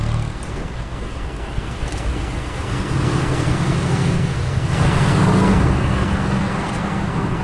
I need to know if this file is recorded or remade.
remade